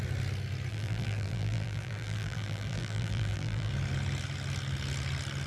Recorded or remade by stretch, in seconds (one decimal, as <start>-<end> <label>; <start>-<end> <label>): 0.0-0.7 recorded; 0.7-3.7 remade; 3.7-5.5 recorded